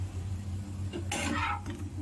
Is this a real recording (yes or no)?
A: yes